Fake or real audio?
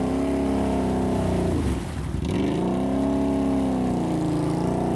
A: real